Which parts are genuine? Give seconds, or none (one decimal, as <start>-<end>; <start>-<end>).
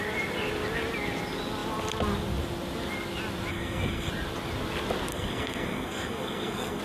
0.0-3.5; 4.1-5.1